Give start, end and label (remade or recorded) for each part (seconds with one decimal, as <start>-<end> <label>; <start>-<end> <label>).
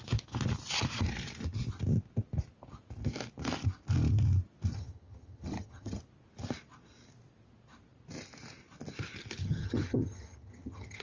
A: 0.0-4.7 recorded; 4.7-6.0 remade; 6.0-9.4 recorded; 9.4-11.0 remade